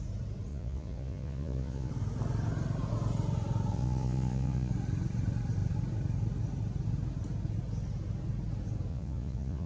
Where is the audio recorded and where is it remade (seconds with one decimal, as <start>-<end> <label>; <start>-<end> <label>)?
0.0-0.5 recorded; 0.5-1.9 remade; 1.9-3.7 recorded; 3.7-4.7 remade; 4.7-8.9 recorded; 8.9-9.7 remade